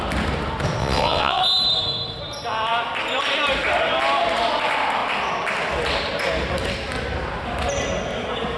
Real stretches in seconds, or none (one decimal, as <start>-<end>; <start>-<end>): 0.0-0.8; 1.4-8.6